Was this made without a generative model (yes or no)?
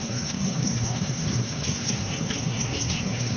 no